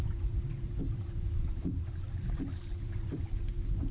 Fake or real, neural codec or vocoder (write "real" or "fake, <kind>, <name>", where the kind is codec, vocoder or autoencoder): fake, vocoder, BigVGAN v2